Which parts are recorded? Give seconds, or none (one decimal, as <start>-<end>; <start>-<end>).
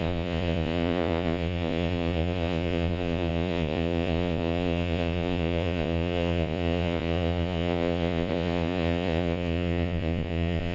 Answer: none